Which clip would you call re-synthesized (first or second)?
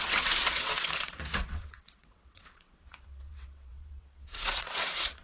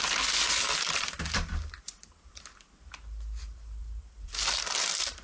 first